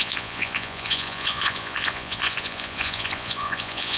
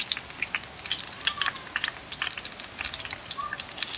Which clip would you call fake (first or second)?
first